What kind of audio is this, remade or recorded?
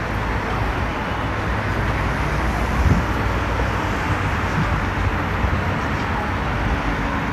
recorded